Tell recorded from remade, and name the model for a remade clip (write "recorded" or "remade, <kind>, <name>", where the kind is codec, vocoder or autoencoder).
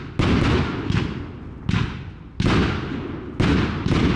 recorded